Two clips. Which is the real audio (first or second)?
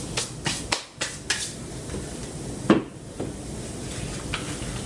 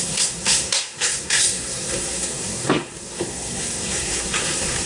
first